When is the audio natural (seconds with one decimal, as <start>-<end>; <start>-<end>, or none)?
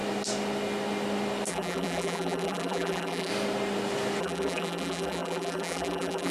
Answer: 0.0-1.5; 3.3-4.2